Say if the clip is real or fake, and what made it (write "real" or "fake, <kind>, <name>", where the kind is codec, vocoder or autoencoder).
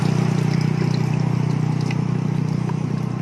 fake, vocoder, BigVGAN v2